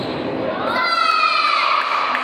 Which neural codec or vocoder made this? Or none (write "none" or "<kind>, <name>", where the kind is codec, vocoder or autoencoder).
none